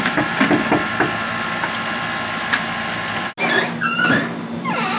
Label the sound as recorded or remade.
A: recorded